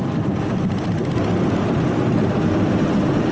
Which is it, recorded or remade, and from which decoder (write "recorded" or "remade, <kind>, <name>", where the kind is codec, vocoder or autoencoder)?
recorded